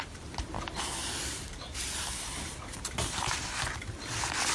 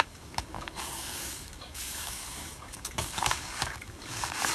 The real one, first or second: first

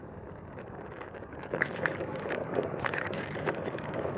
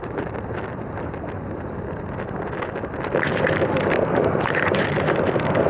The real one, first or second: second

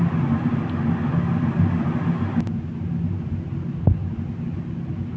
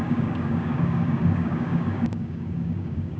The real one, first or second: first